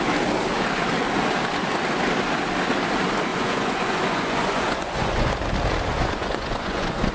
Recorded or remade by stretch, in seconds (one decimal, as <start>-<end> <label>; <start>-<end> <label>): 0.0-3.3 recorded; 3.3-5.3 remade; 5.3-5.9 recorded; 5.9-7.1 remade